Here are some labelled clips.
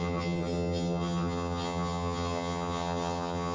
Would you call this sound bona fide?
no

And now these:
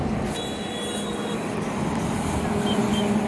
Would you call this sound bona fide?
yes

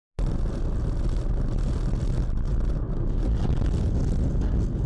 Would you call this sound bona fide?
yes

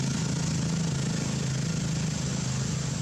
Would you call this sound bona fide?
yes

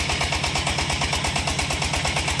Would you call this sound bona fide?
yes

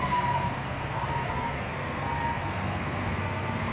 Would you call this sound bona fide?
no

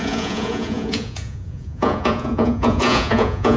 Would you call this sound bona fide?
no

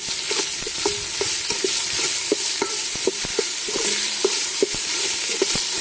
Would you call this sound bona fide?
no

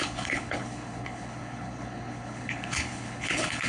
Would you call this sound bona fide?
no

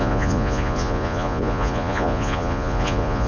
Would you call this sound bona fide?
no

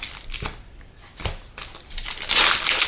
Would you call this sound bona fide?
yes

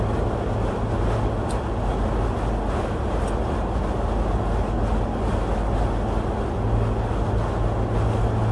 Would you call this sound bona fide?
yes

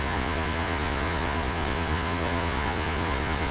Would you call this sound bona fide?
no